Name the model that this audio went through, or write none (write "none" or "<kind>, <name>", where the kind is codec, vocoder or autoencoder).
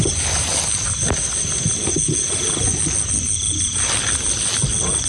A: none